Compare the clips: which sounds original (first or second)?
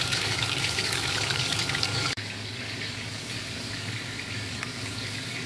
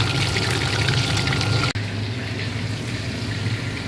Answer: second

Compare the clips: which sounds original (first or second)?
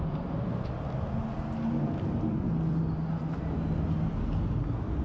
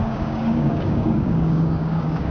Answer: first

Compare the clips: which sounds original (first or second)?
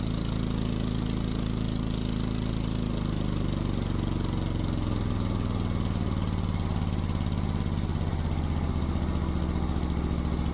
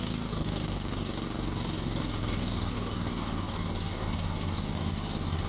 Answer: first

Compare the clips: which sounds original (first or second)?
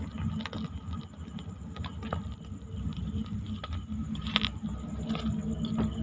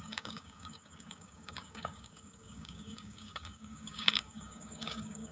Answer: first